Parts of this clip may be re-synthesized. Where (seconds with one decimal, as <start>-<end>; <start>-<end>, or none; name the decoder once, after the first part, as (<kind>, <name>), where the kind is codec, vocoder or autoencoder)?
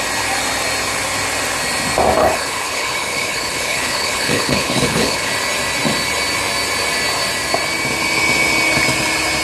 2.2-5.3 (codec, HILCodec)